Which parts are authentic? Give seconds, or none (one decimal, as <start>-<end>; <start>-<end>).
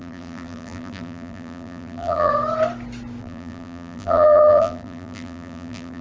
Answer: 2.3-3.2